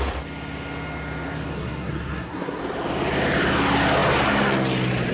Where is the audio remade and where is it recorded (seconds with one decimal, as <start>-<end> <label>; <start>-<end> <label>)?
0.0-1.5 recorded; 1.5-2.6 remade; 2.6-5.1 recorded